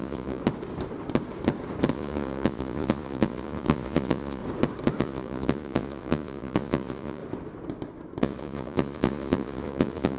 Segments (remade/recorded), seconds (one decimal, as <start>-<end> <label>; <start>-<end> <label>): 0.0-0.4 remade; 0.4-1.9 recorded; 1.9-4.4 remade; 4.4-5.0 recorded; 5.0-7.2 remade; 7.2-8.2 recorded; 8.2-10.2 remade